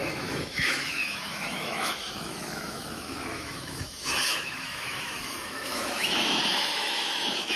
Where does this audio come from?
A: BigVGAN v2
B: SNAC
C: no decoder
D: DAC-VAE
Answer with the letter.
D